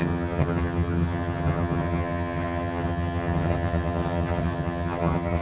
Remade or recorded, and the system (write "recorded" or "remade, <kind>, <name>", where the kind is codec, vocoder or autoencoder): remade, vocoder, HiFi-GAN